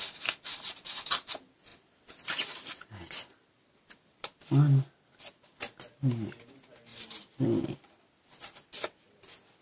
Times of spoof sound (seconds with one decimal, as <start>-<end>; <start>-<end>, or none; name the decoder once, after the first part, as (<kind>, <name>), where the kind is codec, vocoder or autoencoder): 1.7-6.4 (vocoder, BigVGAN v2); 6.9-9.2